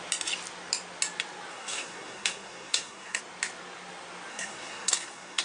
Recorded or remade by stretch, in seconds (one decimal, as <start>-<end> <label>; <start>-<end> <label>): 0.0-1.5 recorded; 1.5-3.2 remade; 3.2-4.3 recorded; 4.3-5.4 remade